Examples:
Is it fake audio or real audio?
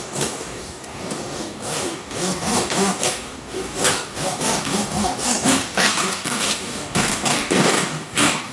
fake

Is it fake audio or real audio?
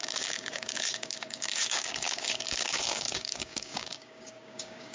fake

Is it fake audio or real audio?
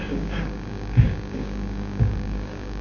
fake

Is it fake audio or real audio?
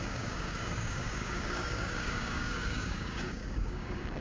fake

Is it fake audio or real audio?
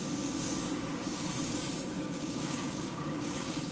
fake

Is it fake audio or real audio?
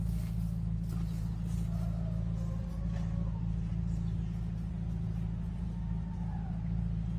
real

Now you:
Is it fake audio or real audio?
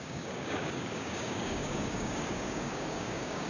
fake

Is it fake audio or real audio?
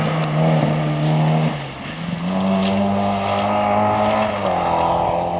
real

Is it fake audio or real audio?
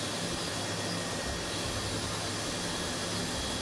real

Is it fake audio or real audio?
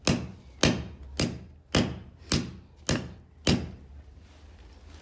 real